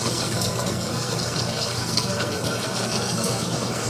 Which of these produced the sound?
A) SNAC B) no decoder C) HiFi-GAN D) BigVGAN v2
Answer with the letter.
A